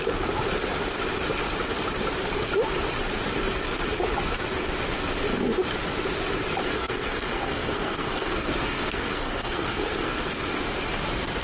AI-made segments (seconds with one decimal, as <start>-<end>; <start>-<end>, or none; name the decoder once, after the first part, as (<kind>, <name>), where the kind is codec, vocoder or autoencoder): 6.6-10.3 (codec, SNAC)